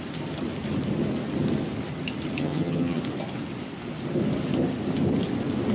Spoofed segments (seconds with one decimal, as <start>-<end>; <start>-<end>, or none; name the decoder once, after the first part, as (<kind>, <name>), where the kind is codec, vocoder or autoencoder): 2.4-3.0 (vocoder, HiFi-GAN)

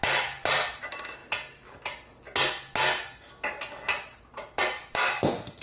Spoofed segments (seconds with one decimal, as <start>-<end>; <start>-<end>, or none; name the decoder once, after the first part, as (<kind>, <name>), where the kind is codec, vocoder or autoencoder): none

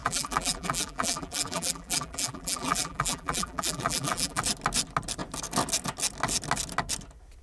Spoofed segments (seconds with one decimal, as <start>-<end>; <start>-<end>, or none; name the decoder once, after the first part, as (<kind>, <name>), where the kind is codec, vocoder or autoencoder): 0.0-4.4 (vocoder, BigVGAN v2)

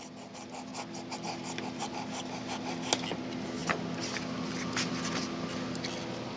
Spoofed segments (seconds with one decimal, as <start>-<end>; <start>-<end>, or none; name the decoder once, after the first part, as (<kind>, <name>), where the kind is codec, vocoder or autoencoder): none

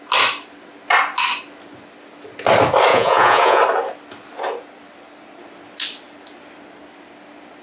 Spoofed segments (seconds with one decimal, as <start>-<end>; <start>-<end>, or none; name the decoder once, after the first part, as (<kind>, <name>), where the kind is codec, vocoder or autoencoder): 2.9-3.6 (vocoder, Vocos)

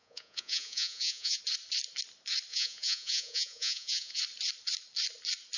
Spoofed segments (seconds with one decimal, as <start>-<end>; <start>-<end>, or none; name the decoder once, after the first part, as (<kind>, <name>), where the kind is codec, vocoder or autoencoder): 0.0-1.4 (vocoder, Vocos); 2.5-4.2